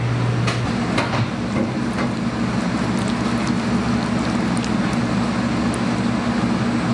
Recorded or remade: recorded